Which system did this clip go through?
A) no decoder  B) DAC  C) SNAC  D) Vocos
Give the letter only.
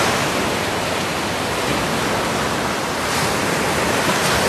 A